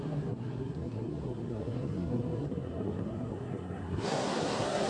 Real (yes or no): no